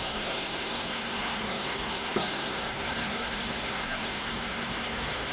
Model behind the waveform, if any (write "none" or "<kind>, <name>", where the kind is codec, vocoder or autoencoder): codec, SNAC